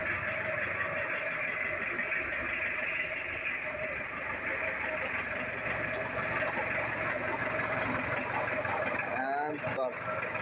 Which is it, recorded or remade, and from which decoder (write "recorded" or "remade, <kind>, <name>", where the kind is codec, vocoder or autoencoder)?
recorded